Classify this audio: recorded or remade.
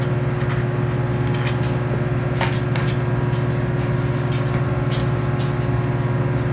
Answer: recorded